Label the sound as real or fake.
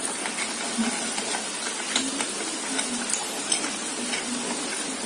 real